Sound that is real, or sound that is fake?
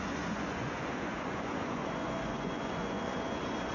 fake